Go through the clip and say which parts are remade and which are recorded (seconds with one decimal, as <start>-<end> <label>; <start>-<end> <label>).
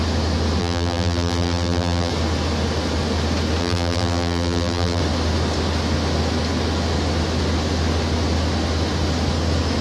0.0-0.6 recorded; 0.6-2.1 remade; 2.1-3.6 recorded; 3.6-5.0 remade; 5.0-9.8 recorded